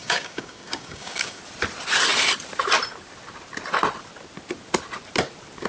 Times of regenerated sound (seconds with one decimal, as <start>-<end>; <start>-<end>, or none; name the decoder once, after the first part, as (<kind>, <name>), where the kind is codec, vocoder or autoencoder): 0.0-1.4 (codec, DAC)